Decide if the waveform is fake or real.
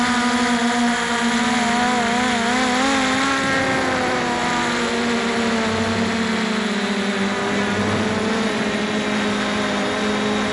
real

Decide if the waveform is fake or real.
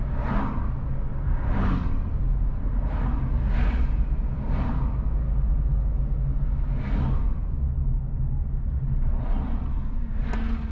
real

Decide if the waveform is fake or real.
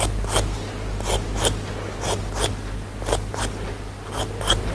real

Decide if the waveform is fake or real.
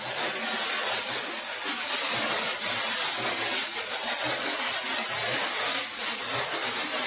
real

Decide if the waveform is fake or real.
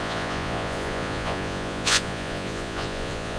fake